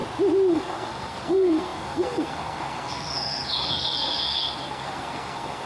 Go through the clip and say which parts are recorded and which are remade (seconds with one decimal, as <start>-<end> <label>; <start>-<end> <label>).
0.0-0.5 recorded; 0.5-5.7 remade